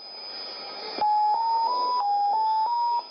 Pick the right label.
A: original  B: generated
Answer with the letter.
A